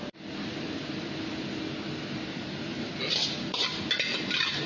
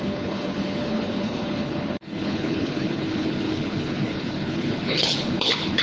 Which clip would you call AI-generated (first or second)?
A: second